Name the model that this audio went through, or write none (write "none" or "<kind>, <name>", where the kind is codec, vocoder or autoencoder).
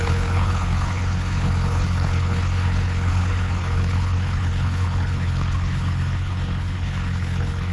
codec, HILCodec